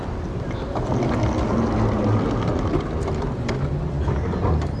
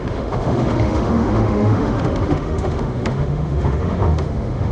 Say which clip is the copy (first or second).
second